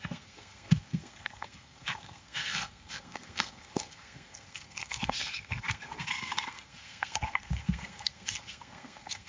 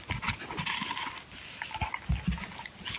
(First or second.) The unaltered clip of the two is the second